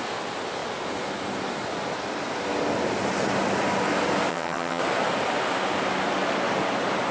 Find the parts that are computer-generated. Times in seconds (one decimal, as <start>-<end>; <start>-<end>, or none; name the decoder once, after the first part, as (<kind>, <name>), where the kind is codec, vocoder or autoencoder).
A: 4.3-4.8 (vocoder, HiFi-GAN)